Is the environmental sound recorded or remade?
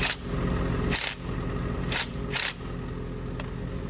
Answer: recorded